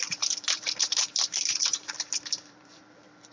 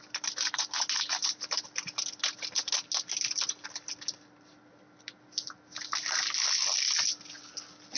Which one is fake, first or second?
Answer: first